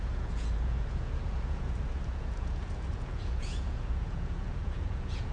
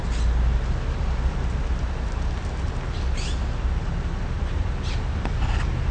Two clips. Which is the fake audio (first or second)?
first